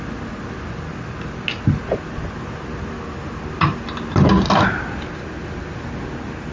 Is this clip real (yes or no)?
yes